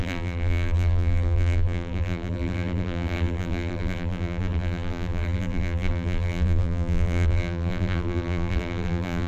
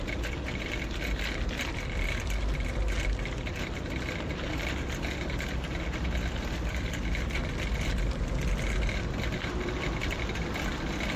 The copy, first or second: first